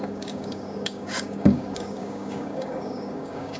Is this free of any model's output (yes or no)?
no